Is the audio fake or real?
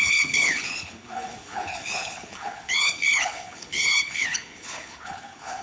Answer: fake